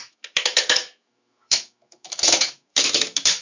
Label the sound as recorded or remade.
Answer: remade